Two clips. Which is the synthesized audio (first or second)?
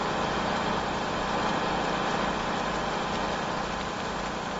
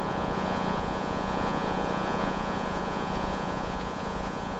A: second